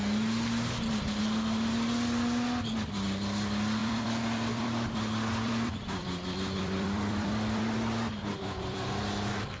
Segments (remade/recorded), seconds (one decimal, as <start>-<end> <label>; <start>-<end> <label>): 0.0-3.8 recorded; 3.8-9.0 remade; 9.0-9.6 recorded